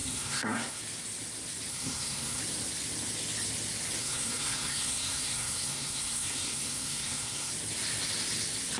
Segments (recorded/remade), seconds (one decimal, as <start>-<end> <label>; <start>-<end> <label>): 0.0-0.8 remade; 0.8-1.7 recorded; 1.7-2.4 remade; 2.4-4.0 recorded; 4.0-7.5 remade; 7.5-8.8 recorded